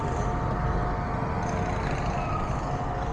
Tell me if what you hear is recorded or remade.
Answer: recorded